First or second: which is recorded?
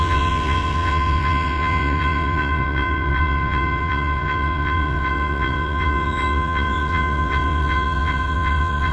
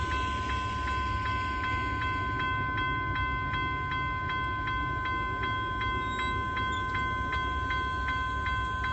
second